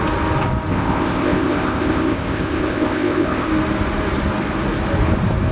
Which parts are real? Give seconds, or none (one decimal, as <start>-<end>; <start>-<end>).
0.0-0.7; 3.5-5.5